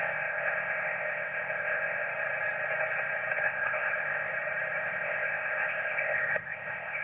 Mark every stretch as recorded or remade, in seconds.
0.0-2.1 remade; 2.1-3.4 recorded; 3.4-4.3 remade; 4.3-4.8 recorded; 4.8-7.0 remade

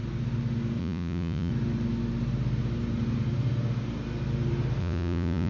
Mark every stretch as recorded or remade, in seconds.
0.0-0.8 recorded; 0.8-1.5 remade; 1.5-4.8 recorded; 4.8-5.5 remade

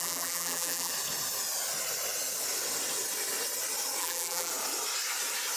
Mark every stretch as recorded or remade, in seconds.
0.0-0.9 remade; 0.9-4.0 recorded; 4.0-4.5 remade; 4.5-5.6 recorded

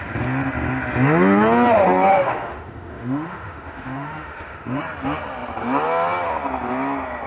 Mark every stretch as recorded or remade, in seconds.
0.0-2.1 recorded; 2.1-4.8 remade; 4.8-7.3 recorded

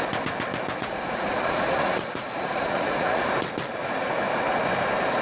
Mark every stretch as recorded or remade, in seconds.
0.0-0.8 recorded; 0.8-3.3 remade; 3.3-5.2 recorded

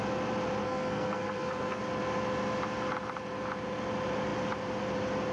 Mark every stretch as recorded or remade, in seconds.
0.0-0.6 recorded; 0.6-1.8 remade; 1.8-5.3 recorded

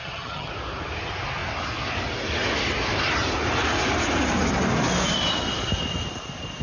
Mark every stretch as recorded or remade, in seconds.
0.0-0.5 remade; 0.5-6.6 recorded

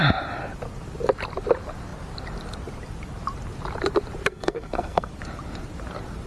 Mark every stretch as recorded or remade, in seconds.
0.0-4.3 recorded; 4.3-5.1 remade; 5.1-6.3 recorded